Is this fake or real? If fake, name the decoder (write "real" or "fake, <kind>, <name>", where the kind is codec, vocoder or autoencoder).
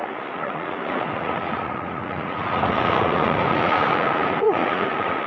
fake, vocoder, Vocos